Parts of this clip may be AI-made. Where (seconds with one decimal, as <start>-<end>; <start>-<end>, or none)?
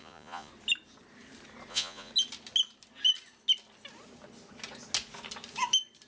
0.0-0.5; 1.7-2.1